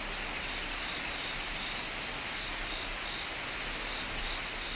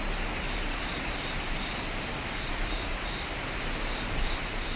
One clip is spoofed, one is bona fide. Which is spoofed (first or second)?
second